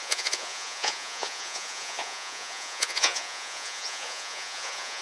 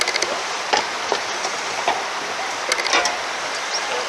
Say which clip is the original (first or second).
second